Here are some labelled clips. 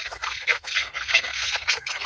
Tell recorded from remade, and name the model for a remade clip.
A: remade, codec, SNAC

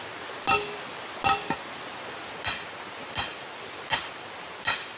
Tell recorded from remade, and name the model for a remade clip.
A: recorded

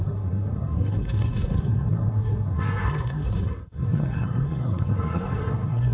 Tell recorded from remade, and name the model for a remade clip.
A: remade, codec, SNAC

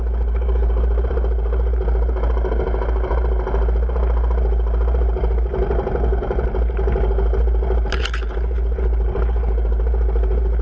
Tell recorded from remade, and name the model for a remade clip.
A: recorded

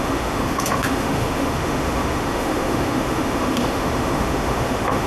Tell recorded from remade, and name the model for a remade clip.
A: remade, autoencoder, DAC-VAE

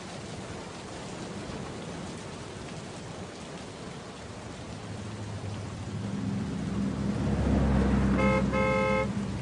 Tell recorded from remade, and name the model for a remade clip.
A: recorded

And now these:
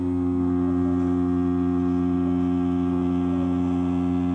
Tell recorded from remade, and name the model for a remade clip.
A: recorded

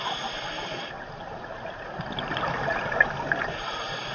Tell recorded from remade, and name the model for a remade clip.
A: recorded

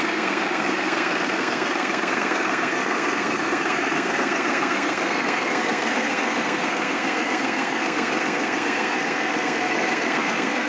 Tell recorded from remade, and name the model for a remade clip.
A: remade, codec, SNAC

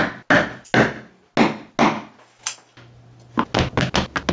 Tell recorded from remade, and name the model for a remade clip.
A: recorded